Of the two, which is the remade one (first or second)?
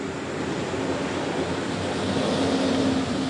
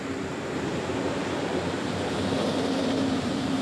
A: second